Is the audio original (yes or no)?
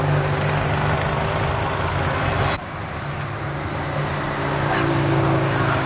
yes